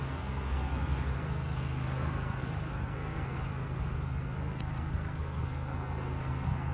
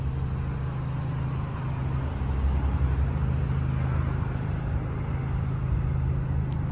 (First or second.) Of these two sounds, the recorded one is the second